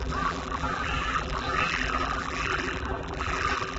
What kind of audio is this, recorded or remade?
remade